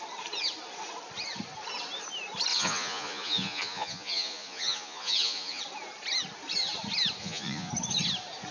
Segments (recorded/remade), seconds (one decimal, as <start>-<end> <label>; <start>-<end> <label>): 0.0-2.5 recorded; 2.5-5.6 remade; 5.6-7.2 recorded; 7.2-7.7 remade; 7.7-8.5 recorded